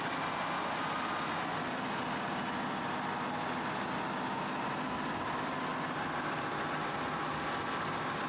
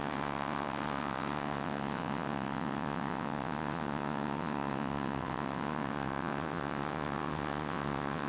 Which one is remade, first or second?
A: second